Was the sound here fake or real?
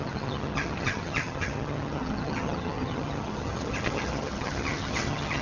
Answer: fake